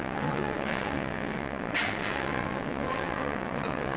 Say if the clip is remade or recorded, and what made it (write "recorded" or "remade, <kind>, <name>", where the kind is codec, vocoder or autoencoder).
remade, vocoder, WaveNeXt